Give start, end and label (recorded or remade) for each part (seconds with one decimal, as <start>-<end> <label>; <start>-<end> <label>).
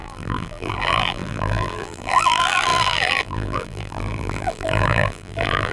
0.0-5.7 remade